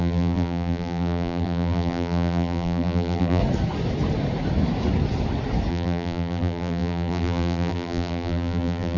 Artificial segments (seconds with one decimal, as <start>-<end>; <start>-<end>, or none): 0.0-3.4; 5.7-9.0